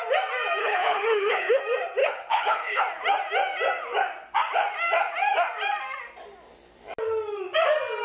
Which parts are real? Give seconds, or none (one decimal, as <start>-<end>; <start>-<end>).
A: 0.0-0.6; 1.6-2.0; 2.8-8.0